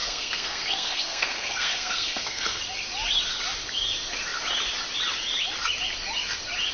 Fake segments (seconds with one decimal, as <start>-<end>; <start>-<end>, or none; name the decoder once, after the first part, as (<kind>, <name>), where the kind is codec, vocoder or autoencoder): 0.0-2.6 (codec, SNAC)